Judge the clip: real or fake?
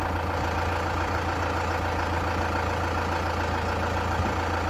real